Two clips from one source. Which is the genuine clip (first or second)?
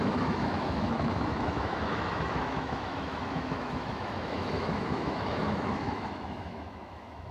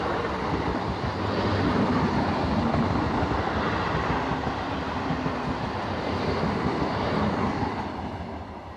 second